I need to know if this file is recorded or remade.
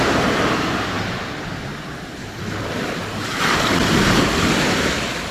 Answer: recorded